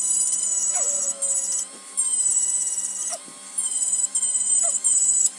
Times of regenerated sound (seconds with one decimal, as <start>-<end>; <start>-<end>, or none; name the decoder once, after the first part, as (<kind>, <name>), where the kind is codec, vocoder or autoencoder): none